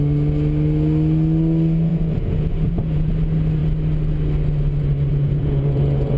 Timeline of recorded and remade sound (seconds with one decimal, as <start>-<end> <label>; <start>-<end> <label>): 0.0-1.9 recorded; 1.9-3.1 remade; 3.1-5.1 recorded; 5.1-6.2 remade